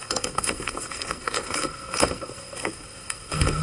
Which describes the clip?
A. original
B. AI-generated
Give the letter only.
B